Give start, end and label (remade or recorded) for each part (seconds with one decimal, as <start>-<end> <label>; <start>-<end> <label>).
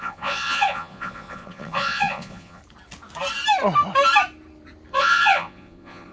0.0-2.6 remade; 2.6-4.9 recorded; 4.9-6.1 remade